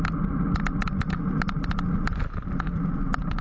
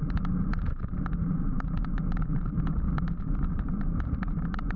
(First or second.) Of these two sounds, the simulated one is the second